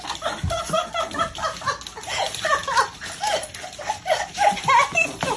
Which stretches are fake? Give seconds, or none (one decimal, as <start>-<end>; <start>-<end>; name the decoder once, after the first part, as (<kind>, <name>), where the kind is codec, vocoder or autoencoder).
2.6-3.9 (vocoder, BigVGAN v2)